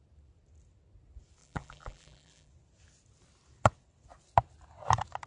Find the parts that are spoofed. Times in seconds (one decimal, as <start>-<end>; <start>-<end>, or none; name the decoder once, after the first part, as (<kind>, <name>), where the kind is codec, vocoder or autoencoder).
1.4-2.5 (vocoder, BigVGAN v2)